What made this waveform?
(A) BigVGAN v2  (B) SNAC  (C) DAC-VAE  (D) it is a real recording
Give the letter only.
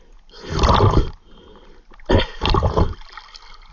D